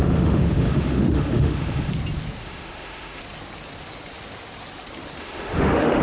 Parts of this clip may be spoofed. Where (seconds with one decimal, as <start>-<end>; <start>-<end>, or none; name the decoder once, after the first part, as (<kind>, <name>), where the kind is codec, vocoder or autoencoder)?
0.0-1.9 (autoencoder, DAC-VAE); 2.4-3.2; 5.2-6.0